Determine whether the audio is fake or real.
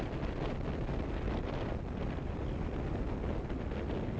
real